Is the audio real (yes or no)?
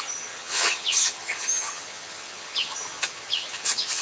no